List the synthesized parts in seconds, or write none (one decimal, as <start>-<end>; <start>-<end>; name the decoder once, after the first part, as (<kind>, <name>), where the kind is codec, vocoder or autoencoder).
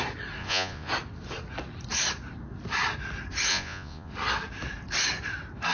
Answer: 0.4-0.9 (vocoder, Vocos); 3.5-4.1